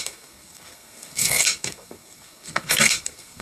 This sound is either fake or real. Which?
fake